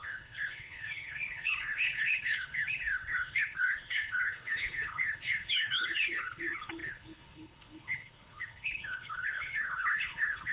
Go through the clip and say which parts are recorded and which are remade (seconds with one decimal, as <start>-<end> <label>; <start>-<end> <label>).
0.0-10.5 remade